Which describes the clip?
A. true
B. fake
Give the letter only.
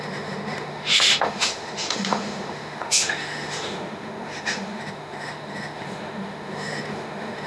B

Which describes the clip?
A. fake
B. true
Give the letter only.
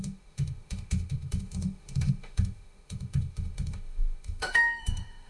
A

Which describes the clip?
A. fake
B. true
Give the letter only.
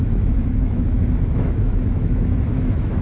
A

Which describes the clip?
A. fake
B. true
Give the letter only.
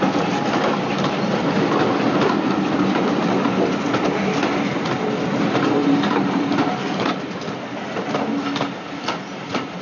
B